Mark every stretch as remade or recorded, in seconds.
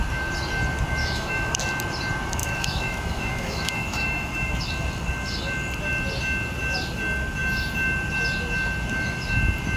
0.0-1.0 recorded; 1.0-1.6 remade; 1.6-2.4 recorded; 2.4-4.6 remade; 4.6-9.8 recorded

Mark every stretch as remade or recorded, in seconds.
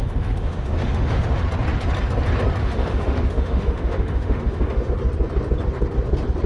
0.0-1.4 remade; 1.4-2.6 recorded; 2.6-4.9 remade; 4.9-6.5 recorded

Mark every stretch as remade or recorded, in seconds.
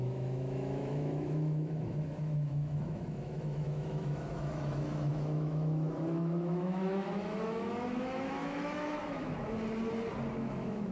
0.0-9.4 remade; 9.4-10.3 recorded; 10.3-10.9 remade